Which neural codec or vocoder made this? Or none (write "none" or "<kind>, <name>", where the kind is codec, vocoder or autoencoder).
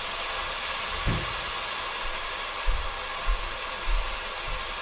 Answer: none